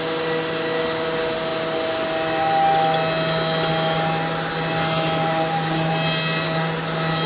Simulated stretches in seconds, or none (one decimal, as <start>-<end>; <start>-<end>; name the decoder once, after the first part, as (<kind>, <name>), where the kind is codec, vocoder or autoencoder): none